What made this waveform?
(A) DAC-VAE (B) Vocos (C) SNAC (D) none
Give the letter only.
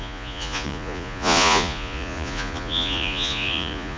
B